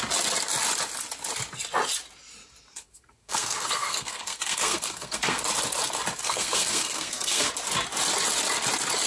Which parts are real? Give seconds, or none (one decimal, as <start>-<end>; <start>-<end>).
0.0-2.7; 5.4-6.2; 7.5-9.1